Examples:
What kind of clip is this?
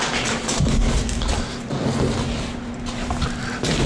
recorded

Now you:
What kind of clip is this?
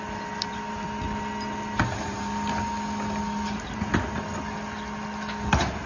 recorded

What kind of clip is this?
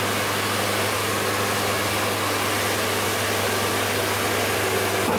recorded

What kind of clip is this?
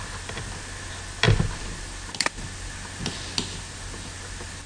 recorded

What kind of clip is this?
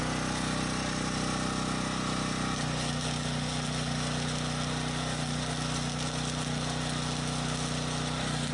recorded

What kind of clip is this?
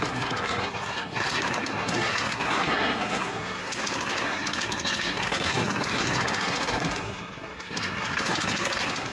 remade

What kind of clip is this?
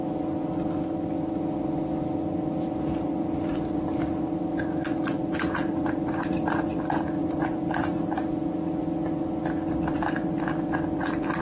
recorded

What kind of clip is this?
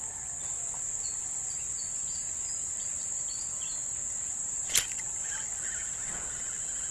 recorded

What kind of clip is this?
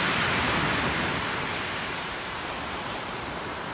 remade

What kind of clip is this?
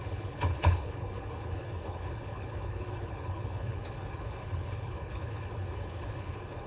remade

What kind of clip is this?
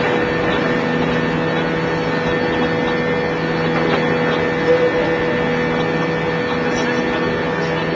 recorded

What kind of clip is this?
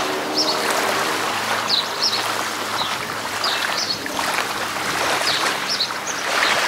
remade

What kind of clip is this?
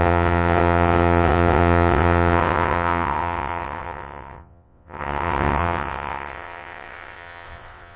remade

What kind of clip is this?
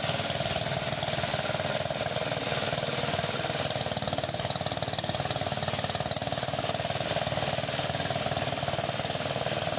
recorded